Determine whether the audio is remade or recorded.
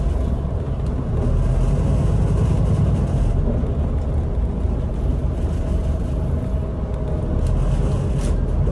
recorded